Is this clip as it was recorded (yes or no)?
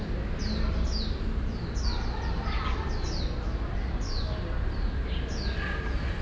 yes